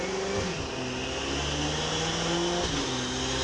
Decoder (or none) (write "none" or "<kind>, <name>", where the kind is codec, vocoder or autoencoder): none